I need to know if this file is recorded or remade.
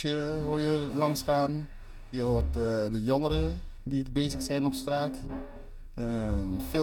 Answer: remade